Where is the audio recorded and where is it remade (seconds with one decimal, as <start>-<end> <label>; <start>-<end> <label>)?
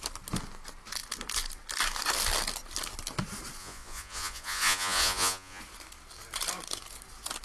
0.0-3.6 recorded; 3.6-5.6 remade; 5.6-7.4 recorded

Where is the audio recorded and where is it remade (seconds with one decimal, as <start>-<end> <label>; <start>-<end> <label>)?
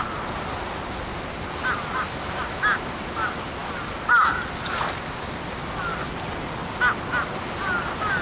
0.0-8.2 recorded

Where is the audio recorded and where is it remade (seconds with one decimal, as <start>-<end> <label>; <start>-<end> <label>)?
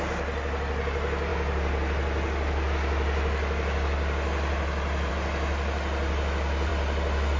0.0-7.4 recorded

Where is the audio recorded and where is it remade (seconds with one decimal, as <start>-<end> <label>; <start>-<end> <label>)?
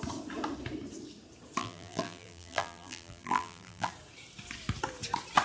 0.0-1.6 recorded; 1.6-3.9 remade; 3.9-5.4 recorded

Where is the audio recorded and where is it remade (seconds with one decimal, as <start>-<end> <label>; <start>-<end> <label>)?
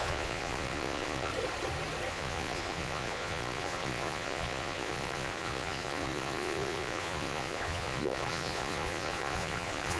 0.0-1.3 remade; 1.3-2.1 recorded; 2.1-10.0 remade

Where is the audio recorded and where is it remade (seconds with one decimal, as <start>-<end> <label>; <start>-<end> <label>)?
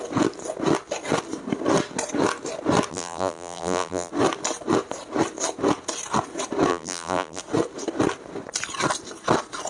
0.0-2.9 recorded; 2.9-4.1 remade; 4.1-6.7 recorded; 6.7-7.4 remade; 7.4-9.7 recorded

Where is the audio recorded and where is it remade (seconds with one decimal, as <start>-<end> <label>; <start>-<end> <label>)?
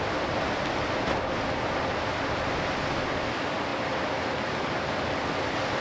0.0-5.8 recorded